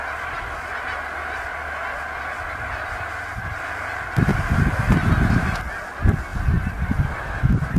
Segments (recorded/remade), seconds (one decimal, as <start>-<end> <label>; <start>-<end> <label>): 0.0-7.8 recorded